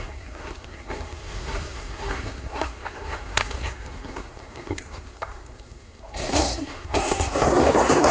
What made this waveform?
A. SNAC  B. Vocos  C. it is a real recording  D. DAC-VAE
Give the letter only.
A